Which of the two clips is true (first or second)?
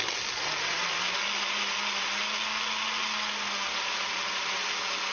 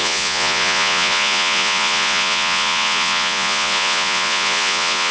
first